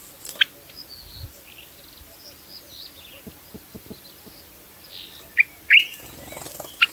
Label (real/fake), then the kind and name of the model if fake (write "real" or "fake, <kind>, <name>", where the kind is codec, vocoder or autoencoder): real